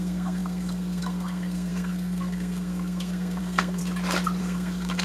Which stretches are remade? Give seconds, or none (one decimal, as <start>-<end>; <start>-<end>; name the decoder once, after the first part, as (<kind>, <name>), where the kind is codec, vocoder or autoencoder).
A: 0.0-3.8 (codec, SNAC); 4.4-5.0